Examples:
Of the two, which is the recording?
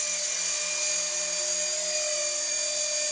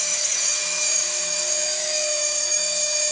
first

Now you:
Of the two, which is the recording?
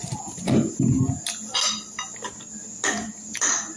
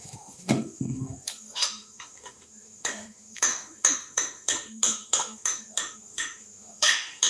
first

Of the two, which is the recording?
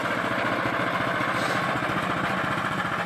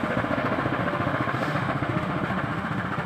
first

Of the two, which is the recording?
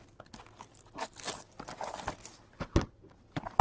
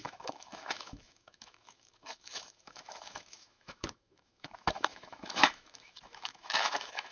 first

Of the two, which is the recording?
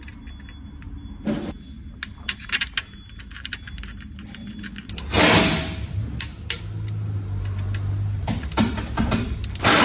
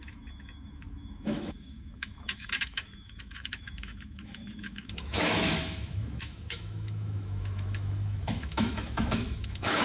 first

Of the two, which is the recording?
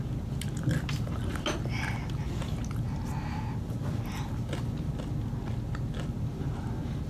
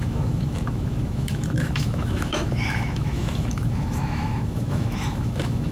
first